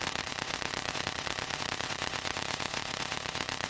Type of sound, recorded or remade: remade